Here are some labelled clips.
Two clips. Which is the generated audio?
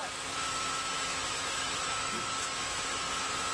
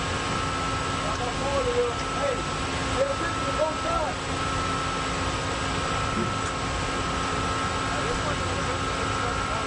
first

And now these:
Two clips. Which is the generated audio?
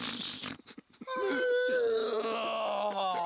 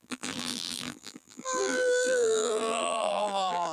second